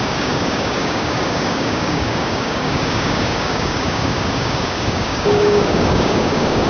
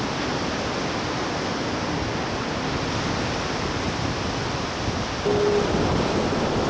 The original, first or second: second